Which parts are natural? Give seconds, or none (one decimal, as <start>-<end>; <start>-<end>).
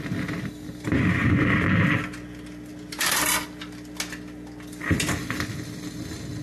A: 0.0-1.2; 2.0-6.4